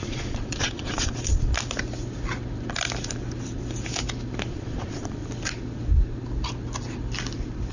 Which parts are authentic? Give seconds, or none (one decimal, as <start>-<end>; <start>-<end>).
1.5-4.5; 5.2-7.7